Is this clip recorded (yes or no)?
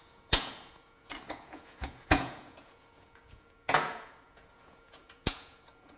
no